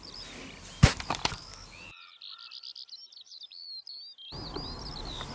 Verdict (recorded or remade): recorded